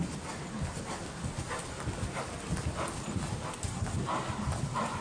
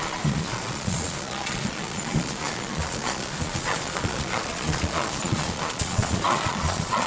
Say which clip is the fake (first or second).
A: second